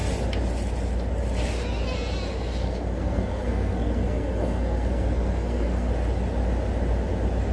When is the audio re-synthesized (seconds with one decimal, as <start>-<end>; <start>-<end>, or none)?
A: 2.6-5.9